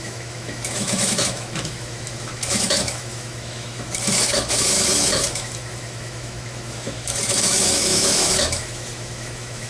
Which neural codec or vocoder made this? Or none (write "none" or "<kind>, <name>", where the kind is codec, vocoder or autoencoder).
autoencoder, DAC-VAE